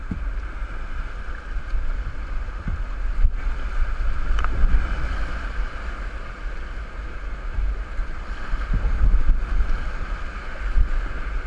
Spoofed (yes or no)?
no